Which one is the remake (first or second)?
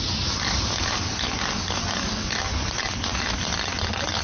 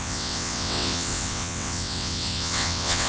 second